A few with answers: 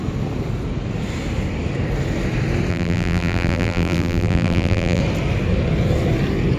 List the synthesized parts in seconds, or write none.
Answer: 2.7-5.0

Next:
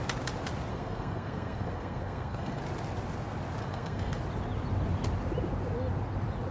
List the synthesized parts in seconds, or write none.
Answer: 0.7-2.6; 3.6-4.2

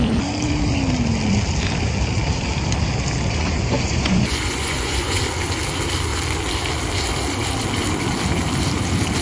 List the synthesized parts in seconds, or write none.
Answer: 3.4-5.2

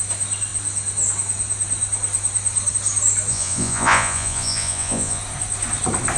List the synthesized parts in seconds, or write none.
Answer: 3.3-5.2